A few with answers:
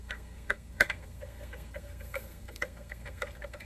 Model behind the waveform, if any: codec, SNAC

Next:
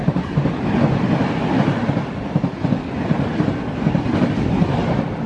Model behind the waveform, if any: none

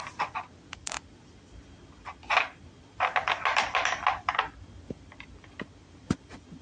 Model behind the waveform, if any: none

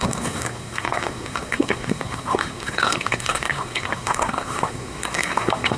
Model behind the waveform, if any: codec, SNAC